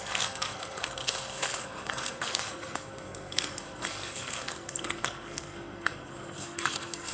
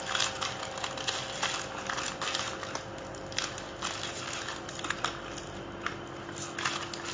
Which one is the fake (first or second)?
first